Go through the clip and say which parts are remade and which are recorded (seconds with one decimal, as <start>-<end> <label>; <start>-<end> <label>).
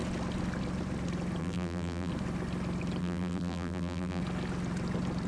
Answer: 0.0-1.4 recorded; 1.4-2.1 remade; 2.1-3.0 recorded; 3.0-4.2 remade; 4.2-5.3 recorded